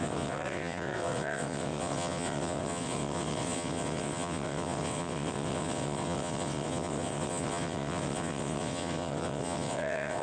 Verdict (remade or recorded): remade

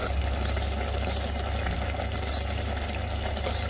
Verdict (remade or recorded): recorded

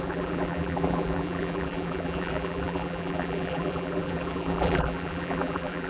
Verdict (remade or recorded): remade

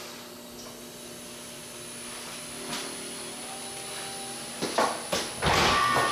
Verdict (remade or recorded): recorded